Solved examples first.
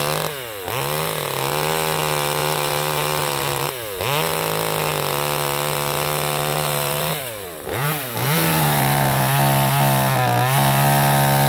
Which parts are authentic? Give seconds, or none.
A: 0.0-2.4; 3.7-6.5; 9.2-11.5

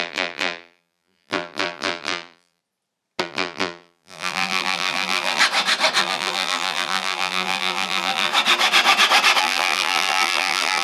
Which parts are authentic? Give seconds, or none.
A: 2.6-3.2; 5.4-6.0; 8.3-9.4

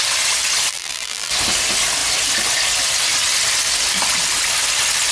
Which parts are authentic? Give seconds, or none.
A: 0.0-0.7; 1.3-5.1

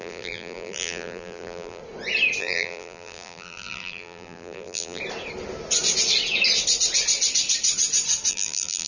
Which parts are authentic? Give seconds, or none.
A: 1.8-2.4; 5.0-8.3

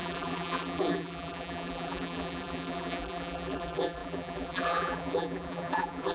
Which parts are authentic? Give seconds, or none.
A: none

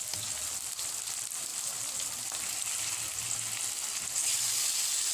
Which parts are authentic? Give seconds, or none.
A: 0.0-5.1